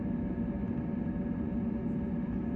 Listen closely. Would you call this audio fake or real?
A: real